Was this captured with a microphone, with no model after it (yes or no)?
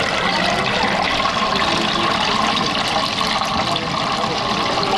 yes